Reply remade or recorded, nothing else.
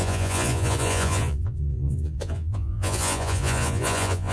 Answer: remade